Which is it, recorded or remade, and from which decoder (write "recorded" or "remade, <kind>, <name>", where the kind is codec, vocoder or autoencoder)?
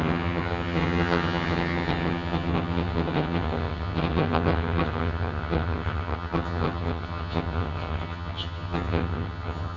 remade, vocoder, HiFi-GAN